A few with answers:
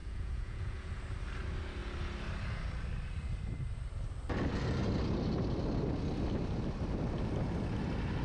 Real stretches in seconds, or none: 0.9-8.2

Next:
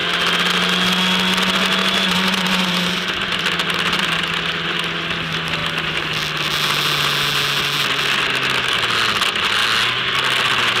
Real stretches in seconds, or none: 0.0-1.8; 3.4-10.8

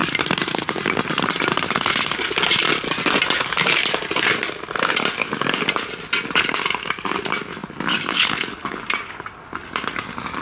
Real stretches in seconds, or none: 0.0-8.1; 8.8-10.4

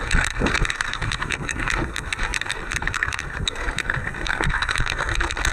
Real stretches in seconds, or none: none